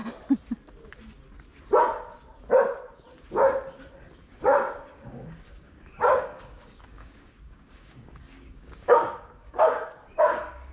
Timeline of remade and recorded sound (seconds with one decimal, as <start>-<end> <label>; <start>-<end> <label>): 0.0-4.3 recorded; 4.3-10.7 remade